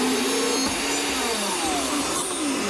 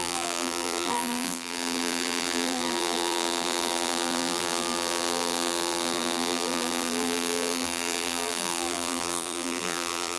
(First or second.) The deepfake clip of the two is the second